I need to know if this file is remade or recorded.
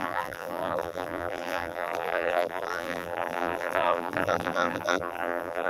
remade